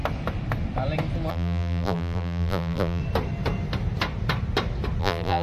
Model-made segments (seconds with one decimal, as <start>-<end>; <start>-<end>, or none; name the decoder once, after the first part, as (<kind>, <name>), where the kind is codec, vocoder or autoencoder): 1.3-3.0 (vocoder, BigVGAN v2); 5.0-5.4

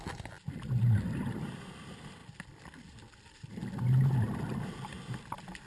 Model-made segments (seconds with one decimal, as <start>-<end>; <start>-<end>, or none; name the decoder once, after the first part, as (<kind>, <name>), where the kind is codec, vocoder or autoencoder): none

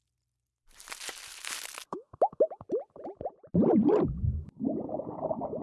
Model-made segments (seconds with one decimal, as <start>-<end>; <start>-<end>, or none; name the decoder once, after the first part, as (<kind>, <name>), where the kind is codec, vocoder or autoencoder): none

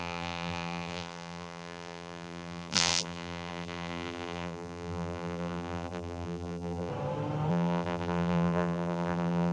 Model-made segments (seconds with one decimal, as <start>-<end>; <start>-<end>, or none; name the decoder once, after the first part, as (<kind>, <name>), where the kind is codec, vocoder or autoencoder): 0.0-6.9 (vocoder, BigVGAN v2); 7.5-9.5

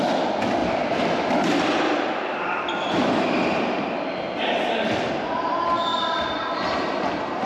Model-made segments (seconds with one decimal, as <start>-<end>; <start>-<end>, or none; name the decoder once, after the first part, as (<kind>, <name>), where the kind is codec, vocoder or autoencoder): 0.6-5.1 (vocoder, BigVGAN v2); 5.9-6.5